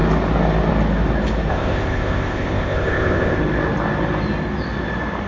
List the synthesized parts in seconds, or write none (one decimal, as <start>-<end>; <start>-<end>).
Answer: 1.5-3.4